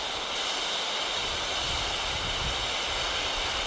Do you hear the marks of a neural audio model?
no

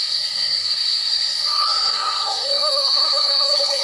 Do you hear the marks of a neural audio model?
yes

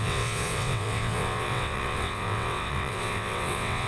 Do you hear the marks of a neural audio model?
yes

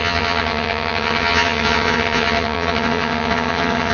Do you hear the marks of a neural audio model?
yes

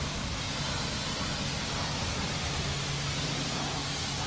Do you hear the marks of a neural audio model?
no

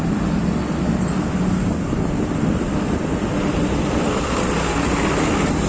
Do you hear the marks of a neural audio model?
no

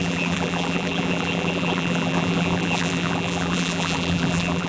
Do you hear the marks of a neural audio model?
yes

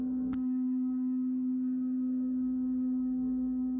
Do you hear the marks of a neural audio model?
yes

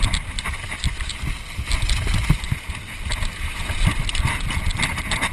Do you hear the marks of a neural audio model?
no